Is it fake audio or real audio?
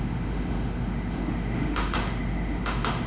fake